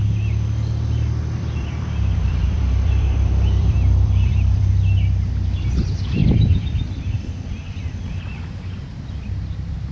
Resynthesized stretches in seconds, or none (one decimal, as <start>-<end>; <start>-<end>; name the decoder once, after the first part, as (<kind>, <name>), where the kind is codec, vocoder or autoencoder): 1.4-4.6 (vocoder, BigVGAN v2); 6.2-9.2